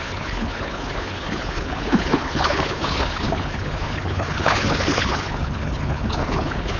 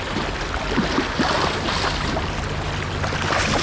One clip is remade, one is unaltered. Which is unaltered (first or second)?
second